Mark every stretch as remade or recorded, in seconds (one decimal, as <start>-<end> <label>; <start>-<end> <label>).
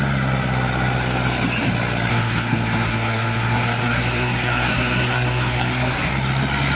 0.0-2.1 recorded; 2.1-6.1 remade; 6.1-6.8 recorded